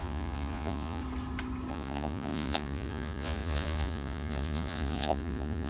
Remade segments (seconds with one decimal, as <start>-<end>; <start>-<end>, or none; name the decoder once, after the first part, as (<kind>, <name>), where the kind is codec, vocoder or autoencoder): 0.0-1.0 (vocoder, Vocos); 1.7-5.7